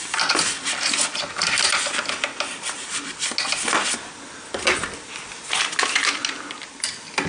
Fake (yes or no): no